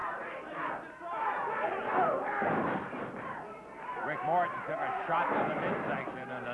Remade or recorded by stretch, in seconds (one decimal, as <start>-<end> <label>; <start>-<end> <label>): 0.0-6.5 recorded